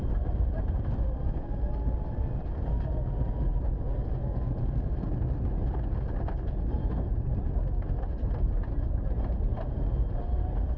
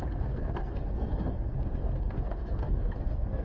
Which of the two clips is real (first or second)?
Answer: first